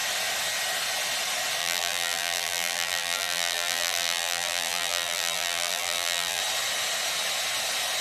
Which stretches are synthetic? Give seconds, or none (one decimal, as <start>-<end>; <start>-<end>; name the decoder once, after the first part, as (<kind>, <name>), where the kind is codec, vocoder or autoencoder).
1.6-6.4 (vocoder, BigVGAN v2)